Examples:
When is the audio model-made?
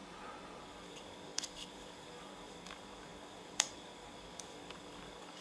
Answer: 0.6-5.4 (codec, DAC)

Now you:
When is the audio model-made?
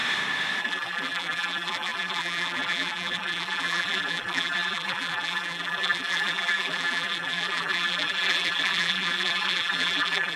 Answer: 0.6-10.4 (vocoder, BigVGAN v2)